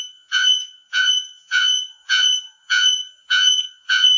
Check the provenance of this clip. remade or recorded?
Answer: remade